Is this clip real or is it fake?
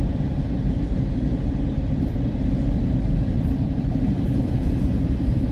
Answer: fake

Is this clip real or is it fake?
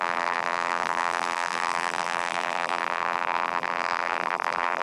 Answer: fake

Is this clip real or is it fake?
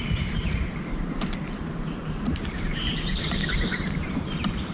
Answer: fake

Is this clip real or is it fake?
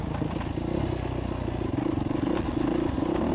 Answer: real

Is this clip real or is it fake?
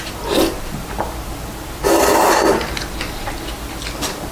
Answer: fake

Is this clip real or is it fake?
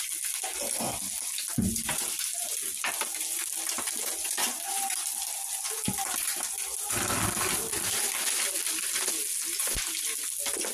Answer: real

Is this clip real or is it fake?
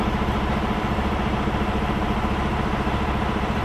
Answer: fake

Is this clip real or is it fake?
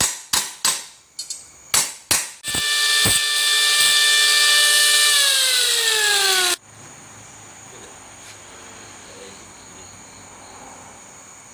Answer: real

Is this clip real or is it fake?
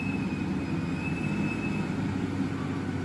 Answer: real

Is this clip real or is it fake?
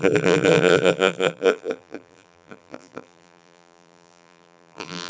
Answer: fake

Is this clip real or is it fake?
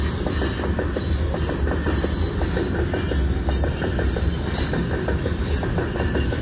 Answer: real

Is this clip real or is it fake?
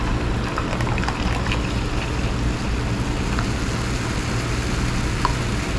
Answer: real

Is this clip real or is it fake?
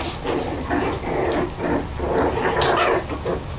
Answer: real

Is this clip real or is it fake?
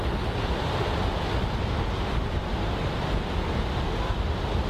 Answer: real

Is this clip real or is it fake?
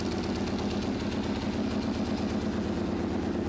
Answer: real